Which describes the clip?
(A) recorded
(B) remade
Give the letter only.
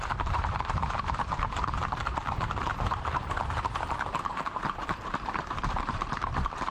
B